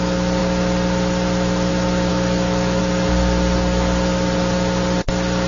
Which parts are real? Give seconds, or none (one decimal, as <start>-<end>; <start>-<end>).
0.0-2.1; 2.8-5.5

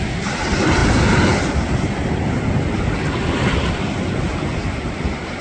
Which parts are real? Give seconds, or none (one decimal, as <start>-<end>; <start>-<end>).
0.0-4.6

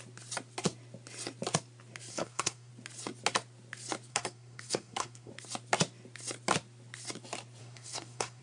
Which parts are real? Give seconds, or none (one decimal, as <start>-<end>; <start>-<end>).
0.0-2.1; 2.7-4.1; 5.3-7.6

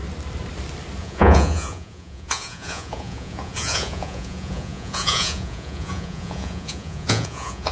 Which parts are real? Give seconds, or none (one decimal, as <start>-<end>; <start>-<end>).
0.0-1.0

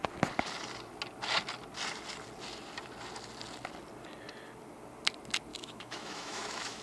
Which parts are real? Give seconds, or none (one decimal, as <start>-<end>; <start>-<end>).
0.0-5.5

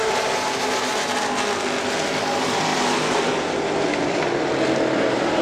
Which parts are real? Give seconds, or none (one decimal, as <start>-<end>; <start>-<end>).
1.3-5.4

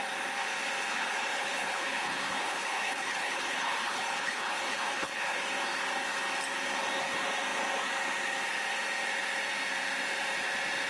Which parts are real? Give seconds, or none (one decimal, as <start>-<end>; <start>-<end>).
0.0-0.9; 5.4-10.9

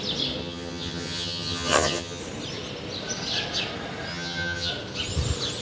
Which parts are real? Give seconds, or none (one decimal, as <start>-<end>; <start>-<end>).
0.0-0.4; 2.2-4.1; 4.7-5.6